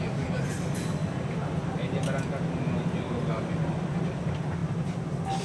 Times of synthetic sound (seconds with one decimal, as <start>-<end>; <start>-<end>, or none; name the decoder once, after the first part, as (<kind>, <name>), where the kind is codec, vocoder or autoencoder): none